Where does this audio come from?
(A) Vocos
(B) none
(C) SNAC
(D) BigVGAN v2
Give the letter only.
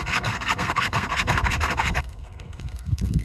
C